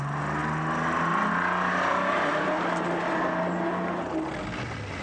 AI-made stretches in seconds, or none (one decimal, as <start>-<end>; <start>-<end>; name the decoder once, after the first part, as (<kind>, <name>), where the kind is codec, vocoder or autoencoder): none